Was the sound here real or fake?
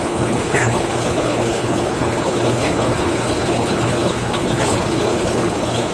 fake